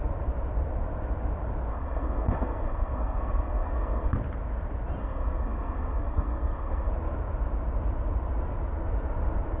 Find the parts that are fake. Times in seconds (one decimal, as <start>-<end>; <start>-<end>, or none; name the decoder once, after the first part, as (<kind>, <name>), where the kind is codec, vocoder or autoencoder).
1.7-4.1 (codec, SNAC); 5.0-6.9